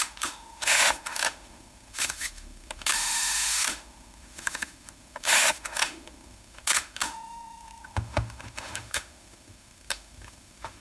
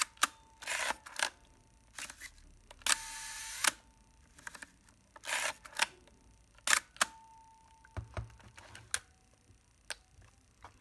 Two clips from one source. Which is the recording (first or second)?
second